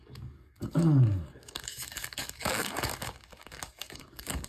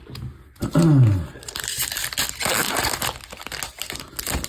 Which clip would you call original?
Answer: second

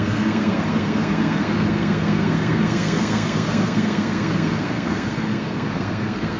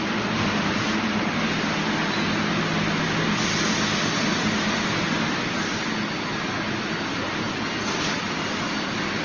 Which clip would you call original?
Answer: second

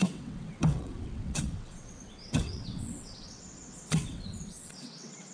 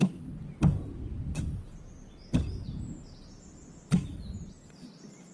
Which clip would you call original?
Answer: second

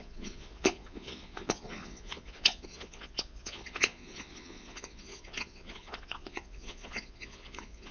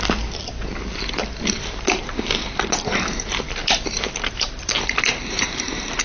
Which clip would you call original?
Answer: second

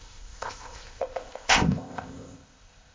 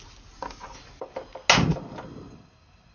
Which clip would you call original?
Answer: second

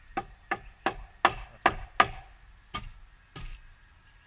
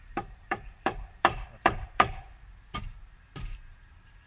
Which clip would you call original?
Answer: first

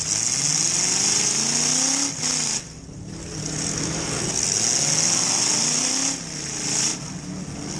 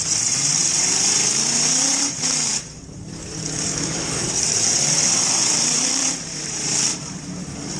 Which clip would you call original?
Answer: first